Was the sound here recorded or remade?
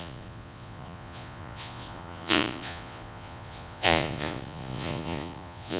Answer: remade